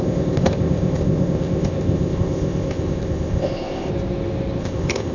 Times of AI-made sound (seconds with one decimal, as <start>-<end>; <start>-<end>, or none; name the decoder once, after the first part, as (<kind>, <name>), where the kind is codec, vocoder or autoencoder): 0.0-3.9 (codec, ZipCodec); 4.6-5.1